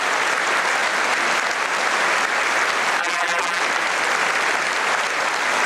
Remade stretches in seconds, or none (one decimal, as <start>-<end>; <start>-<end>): 3.0-3.6